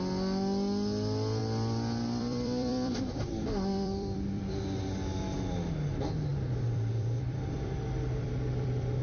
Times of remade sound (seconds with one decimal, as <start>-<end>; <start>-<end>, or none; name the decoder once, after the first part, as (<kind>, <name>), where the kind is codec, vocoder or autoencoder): 1.4-4.4 (vocoder, BigVGAN v2); 6.3-9.0